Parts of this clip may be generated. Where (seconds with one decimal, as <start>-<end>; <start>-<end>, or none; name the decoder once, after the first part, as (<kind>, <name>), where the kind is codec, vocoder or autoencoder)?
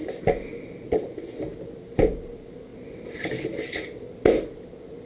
none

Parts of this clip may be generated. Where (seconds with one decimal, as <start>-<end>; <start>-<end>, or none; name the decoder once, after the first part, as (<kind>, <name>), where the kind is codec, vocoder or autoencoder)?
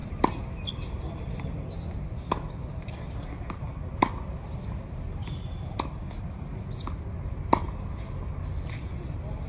none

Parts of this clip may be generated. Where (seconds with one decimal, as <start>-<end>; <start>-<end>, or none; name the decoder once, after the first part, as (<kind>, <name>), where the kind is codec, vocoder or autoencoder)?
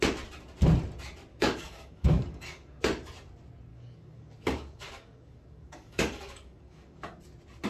1.3-2.8 (codec, DAC); 3.7-7.2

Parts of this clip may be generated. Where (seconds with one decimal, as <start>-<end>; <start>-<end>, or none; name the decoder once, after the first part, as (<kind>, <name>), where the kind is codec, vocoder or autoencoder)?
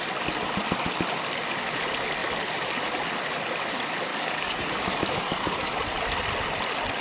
4.1-5.8 (codec, DAC)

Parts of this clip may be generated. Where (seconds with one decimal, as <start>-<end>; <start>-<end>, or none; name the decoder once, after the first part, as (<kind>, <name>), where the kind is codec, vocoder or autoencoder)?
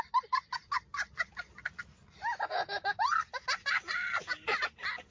none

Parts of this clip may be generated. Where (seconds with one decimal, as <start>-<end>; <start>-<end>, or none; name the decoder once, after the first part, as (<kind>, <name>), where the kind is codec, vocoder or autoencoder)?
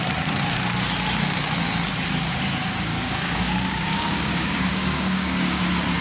2.9-5.6 (codec, DAC)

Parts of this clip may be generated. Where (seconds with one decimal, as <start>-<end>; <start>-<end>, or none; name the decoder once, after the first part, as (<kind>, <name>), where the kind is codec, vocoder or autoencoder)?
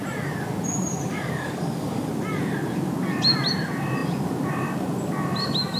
1.1-2.1 (codec, DAC)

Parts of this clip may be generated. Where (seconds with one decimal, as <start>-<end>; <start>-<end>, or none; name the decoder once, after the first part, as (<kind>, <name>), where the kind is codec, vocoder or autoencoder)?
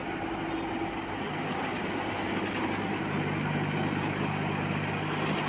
none